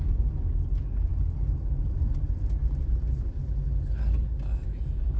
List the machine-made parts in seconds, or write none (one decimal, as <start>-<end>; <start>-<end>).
none